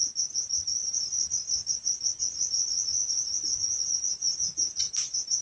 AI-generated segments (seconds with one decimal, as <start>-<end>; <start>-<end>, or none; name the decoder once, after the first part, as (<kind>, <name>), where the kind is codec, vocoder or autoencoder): 0.8-2.2 (vocoder, BigVGAN v2)